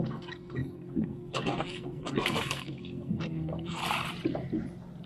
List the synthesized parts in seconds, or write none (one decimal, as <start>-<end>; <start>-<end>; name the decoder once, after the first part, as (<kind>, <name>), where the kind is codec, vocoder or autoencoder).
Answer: 0.0-3.8 (codec, SNAC)